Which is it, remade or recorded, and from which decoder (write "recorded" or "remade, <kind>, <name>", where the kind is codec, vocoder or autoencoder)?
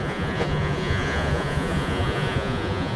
remade, vocoder, Vocos